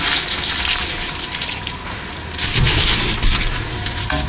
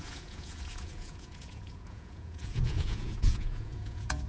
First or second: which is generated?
second